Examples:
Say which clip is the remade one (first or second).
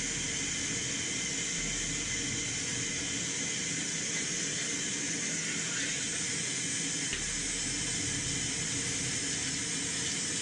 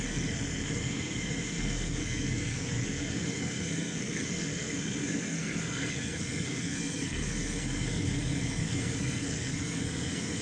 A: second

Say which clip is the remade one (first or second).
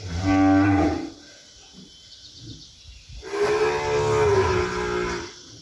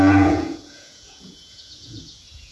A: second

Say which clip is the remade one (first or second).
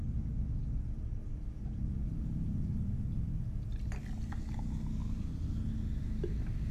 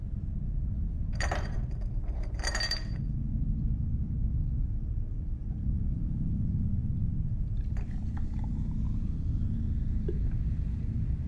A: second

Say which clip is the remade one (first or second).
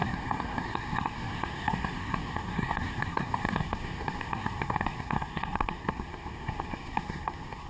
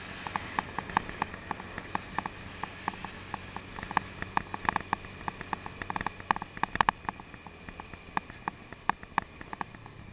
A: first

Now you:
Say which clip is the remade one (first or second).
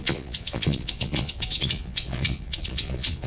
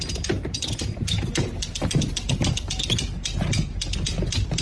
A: first